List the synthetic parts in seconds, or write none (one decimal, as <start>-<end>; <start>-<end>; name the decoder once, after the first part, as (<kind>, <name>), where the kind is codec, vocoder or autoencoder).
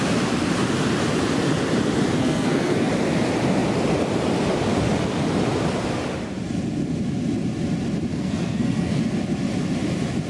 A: 2.2-2.9 (codec, SNAC); 8.1-9.0